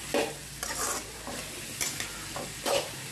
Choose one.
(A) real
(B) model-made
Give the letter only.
A